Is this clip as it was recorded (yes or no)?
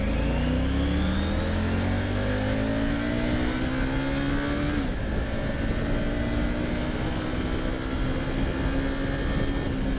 yes